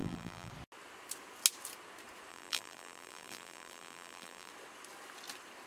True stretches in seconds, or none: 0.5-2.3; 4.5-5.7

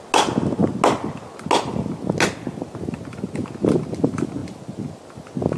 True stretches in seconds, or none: 0.0-5.6

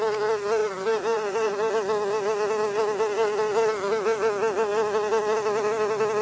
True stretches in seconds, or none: 0.0-0.6; 1.7-6.2

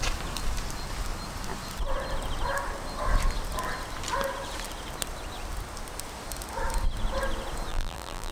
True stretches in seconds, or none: 0.0-7.7